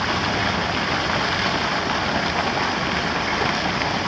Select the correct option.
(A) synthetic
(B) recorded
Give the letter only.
B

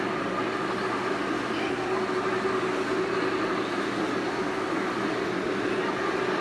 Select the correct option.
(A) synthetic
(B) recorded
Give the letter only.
B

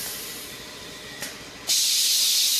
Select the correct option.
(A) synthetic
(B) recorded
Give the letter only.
B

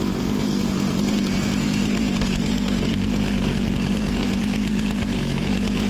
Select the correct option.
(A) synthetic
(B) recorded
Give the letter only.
A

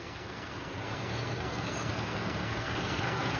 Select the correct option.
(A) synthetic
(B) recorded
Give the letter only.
A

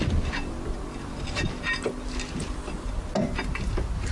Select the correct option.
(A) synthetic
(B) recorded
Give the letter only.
B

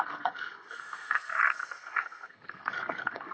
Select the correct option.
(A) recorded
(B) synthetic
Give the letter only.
B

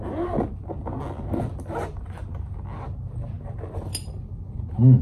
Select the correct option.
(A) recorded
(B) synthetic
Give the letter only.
A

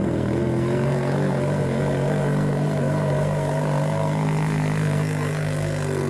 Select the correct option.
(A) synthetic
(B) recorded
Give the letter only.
A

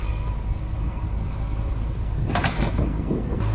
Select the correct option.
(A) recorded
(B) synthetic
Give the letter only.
B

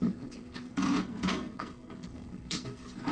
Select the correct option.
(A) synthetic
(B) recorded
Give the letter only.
A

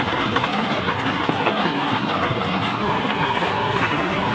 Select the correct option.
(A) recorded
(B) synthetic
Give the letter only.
B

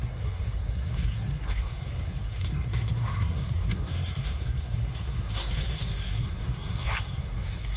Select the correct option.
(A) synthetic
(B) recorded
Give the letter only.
A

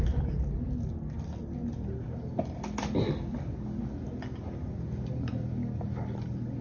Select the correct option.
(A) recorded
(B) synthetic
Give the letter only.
A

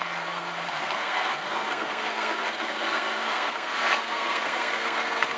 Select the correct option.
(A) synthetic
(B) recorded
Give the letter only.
A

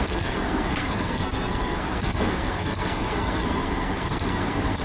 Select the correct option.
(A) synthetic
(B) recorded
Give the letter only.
A